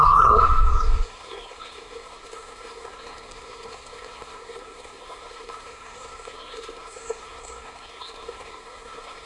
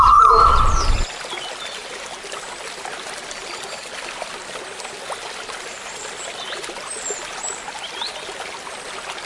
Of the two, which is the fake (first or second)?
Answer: first